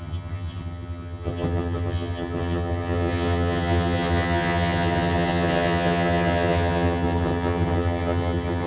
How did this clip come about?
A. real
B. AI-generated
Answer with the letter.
B